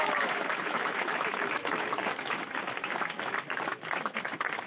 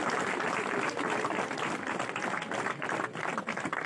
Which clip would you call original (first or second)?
second